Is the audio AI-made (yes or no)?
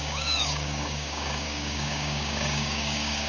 yes